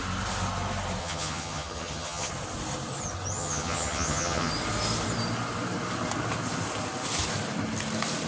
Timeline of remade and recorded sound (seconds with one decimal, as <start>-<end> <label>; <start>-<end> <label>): 0.0-1.0 recorded; 1.0-2.3 remade; 2.3-3.4 recorded; 3.4-4.5 remade; 4.5-8.3 recorded